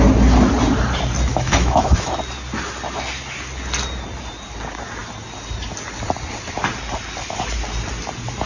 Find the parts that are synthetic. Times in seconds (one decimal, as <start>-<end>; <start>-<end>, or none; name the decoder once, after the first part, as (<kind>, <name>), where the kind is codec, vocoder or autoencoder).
1.3-2.1 (autoencoder, DAC-VAE)